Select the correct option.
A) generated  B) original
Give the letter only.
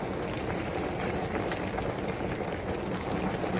B